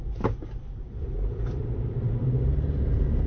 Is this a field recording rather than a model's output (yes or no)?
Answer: no